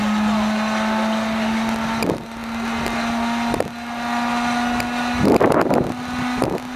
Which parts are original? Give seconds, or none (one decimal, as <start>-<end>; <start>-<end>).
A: 0.0-6.8

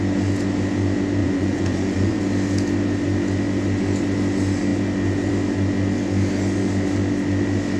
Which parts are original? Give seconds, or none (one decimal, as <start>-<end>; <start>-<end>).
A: 0.0-1.2; 2.2-7.8

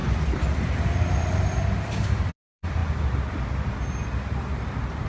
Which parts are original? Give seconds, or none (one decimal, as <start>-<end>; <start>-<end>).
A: 2.8-4.4